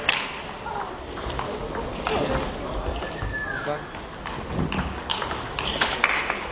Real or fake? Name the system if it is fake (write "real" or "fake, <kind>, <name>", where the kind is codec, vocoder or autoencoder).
real